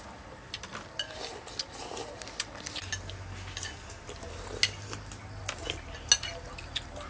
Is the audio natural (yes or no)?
yes